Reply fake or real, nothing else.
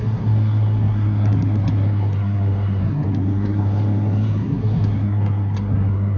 fake